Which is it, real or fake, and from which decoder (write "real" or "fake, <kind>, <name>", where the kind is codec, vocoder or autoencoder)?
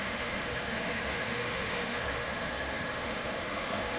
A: fake, autoencoder, DAC-VAE